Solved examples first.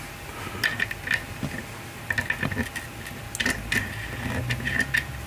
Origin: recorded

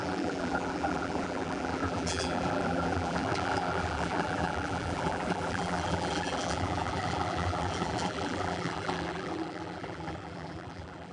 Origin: remade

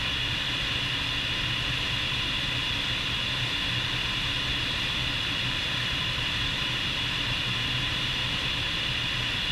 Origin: recorded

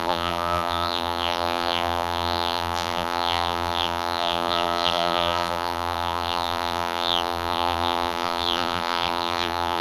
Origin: remade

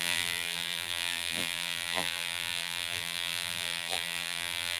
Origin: remade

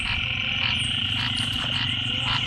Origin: recorded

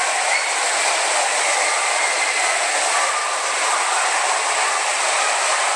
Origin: recorded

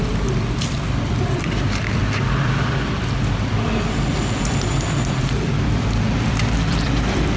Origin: remade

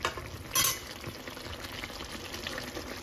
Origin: recorded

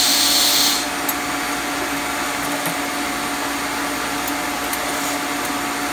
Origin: recorded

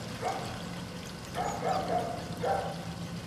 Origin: recorded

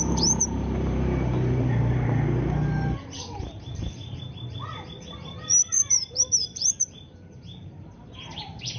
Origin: remade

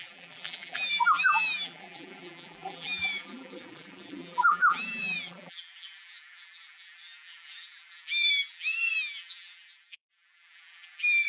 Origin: remade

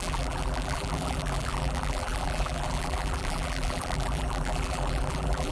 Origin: remade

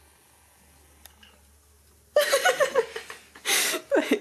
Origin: recorded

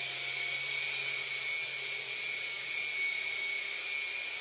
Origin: recorded